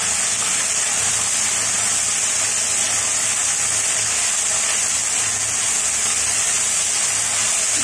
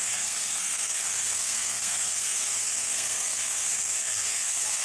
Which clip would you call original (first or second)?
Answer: first